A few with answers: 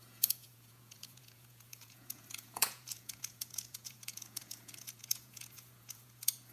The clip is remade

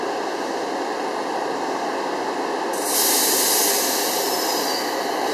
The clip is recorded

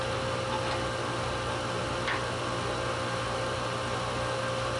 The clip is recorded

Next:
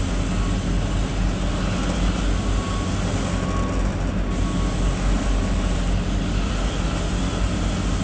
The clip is recorded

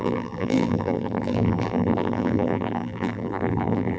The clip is remade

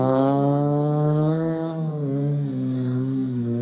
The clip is remade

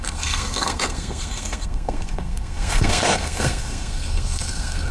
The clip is remade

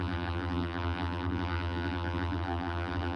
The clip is remade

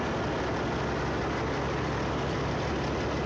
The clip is recorded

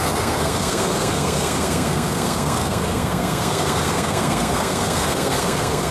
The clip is remade